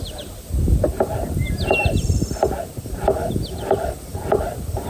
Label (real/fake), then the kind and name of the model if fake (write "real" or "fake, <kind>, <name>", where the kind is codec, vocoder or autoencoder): fake, vocoder, BigVGAN v2